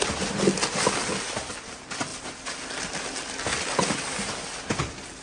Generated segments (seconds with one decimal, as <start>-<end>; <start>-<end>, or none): none